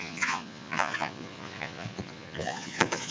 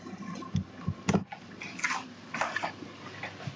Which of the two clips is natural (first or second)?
second